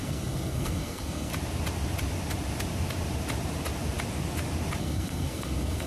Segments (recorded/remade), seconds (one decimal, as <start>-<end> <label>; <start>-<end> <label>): 0.0-1.3 remade; 1.3-4.8 recorded; 4.8-5.9 remade